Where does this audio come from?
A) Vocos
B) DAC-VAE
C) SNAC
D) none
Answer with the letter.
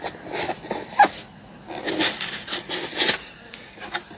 D